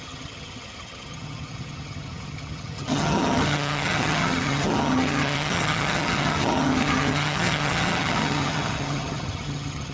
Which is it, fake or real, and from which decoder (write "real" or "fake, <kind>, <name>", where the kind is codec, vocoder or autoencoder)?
fake, vocoder, HiFi-GAN